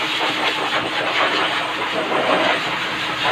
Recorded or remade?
remade